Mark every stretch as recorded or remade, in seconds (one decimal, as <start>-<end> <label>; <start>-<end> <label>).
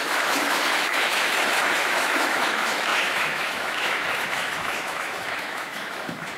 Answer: 0.0-6.4 remade